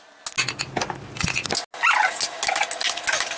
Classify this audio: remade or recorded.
recorded